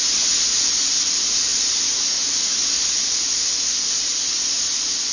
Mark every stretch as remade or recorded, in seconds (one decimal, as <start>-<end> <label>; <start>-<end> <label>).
0.0-5.1 recorded

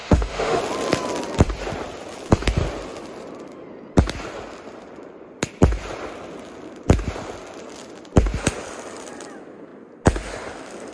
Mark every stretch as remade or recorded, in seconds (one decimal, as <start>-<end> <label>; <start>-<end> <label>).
0.0-0.6 remade; 0.6-10.9 recorded

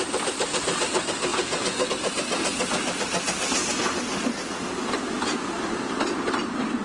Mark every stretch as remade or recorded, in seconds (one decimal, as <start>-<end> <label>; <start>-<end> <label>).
0.0-1.3 recorded; 1.3-1.9 remade; 1.9-6.8 recorded

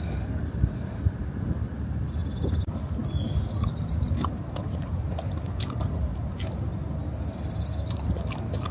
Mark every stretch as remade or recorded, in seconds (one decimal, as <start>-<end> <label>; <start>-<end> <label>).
0.0-2.2 remade; 2.2-3.8 recorded; 3.8-6.7 remade; 6.7-8.7 recorded

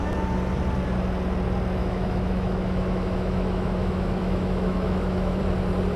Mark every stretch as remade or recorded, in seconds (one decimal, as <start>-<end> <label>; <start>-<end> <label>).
0.0-1.8 recorded; 1.8-5.4 remade; 5.4-6.0 recorded

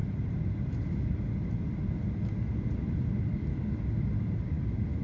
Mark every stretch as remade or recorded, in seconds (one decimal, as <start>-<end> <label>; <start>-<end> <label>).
0.0-5.0 recorded

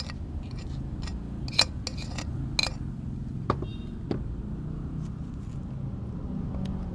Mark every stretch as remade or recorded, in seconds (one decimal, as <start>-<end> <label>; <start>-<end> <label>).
0.0-6.9 recorded

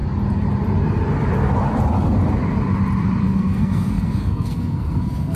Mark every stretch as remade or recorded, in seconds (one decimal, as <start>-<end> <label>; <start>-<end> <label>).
0.0-3.2 recorded; 3.2-5.4 remade